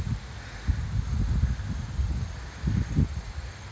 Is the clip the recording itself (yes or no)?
yes